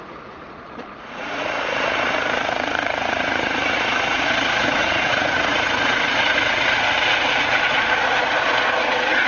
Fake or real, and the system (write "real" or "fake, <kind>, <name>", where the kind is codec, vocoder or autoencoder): fake, vocoder, Vocos